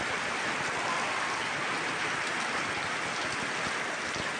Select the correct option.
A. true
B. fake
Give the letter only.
A